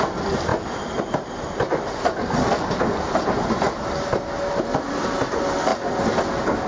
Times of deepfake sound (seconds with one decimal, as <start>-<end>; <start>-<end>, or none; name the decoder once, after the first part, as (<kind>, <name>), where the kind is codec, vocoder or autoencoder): none